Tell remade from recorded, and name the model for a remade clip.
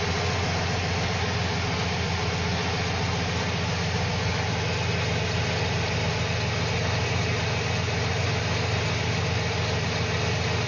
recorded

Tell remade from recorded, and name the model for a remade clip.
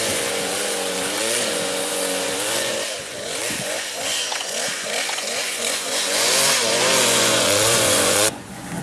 remade, vocoder, Vocos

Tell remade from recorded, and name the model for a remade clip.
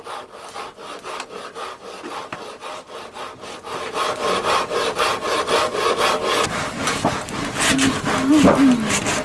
recorded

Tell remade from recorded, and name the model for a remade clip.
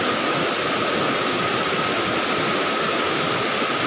recorded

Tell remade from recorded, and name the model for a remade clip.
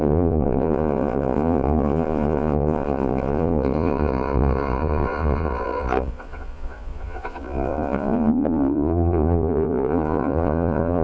remade, vocoder, Vocos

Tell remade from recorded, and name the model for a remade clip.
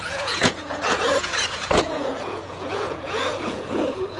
remade, vocoder, Vocos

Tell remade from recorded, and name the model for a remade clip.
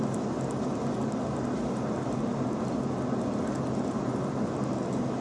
recorded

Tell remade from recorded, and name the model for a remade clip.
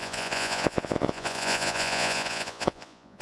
remade, vocoder, Vocos